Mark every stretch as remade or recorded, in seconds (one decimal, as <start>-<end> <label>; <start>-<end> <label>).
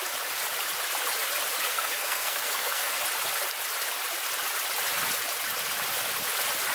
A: 0.0-1.7 recorded; 1.7-3.0 remade; 3.0-6.7 recorded